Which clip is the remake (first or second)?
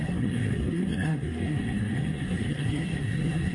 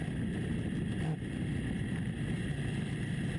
first